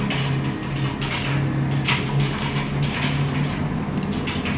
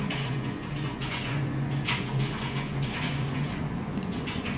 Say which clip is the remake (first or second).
second